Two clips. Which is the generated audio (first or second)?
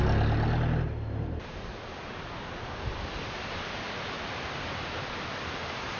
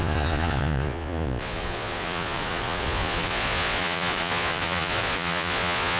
second